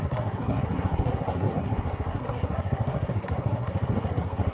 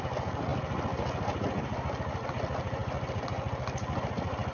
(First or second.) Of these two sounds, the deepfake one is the first